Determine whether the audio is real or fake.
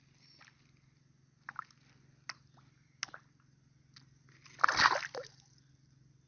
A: real